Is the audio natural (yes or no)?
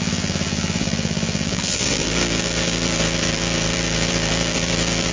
no